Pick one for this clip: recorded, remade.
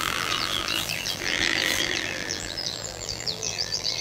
remade